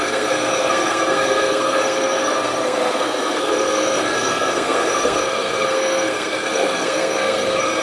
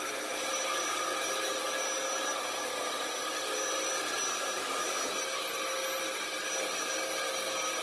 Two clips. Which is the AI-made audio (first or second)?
first